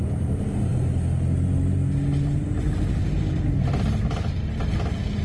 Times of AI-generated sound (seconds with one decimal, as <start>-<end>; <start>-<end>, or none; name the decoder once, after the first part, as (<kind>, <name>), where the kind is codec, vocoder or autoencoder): none